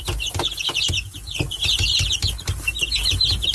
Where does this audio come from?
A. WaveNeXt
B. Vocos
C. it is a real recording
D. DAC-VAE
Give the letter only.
C